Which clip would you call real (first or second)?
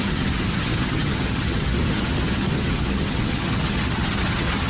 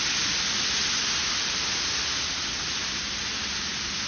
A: second